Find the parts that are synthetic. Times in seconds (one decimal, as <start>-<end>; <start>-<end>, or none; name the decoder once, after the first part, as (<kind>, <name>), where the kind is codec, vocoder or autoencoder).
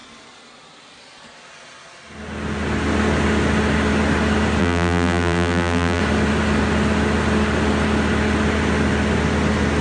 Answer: 4.6-6.0 (vocoder, BigVGAN v2)